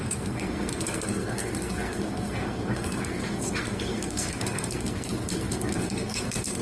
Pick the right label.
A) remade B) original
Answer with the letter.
A